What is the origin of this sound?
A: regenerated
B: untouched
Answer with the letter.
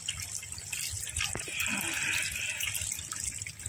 B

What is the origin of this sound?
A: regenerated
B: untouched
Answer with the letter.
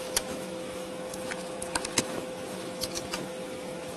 A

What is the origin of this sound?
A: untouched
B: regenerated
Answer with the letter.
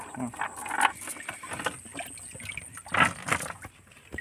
A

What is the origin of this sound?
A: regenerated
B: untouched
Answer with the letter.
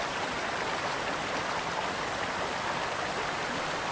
B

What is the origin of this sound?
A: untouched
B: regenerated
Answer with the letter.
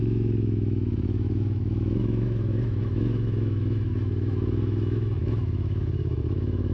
B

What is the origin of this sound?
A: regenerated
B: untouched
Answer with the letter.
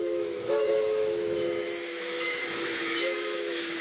A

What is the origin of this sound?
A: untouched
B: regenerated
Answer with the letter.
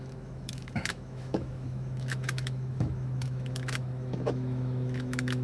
B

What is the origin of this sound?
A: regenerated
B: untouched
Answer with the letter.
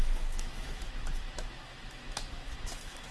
A